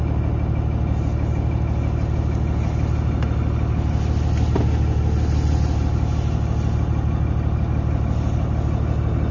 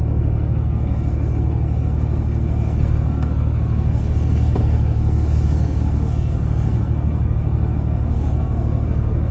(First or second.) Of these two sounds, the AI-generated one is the second